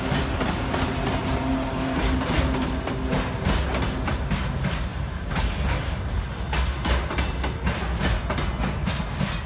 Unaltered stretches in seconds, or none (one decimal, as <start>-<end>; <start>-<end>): 0.0-9.5